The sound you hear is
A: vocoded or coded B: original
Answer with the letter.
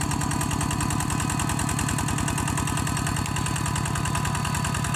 B